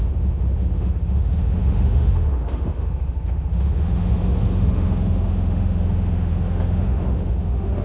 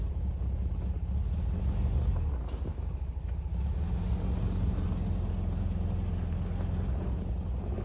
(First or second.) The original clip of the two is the second